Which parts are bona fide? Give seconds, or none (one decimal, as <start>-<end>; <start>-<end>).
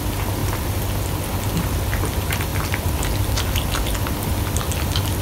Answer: 0.0-5.2